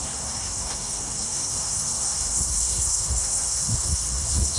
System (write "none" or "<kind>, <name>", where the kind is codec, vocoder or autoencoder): codec, SNAC